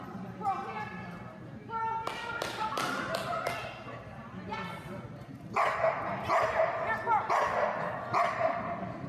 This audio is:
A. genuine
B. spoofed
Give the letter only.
A